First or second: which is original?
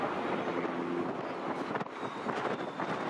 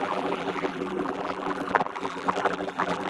first